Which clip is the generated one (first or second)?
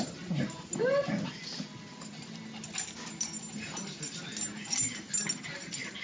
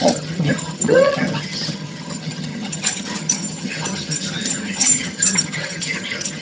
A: second